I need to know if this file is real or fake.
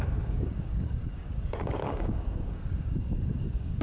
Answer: fake